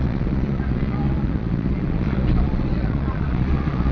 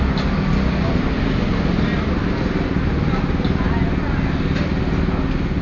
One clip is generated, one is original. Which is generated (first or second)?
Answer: first